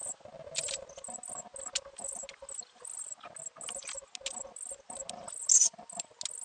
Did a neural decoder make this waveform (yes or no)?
no